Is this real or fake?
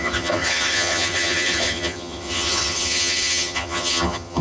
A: fake